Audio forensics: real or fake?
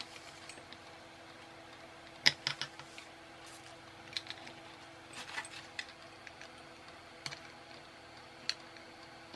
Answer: real